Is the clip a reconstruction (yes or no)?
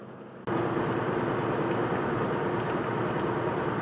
no